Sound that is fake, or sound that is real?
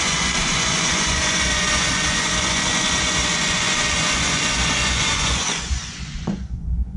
fake